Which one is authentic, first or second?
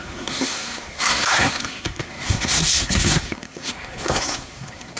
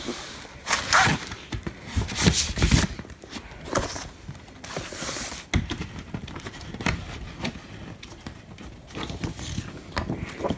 second